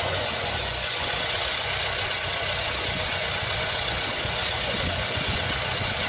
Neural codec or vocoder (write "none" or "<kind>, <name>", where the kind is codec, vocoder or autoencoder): vocoder, Vocos